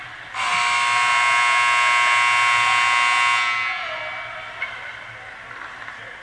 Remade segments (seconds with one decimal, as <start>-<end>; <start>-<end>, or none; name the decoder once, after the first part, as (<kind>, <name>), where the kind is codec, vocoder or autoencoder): none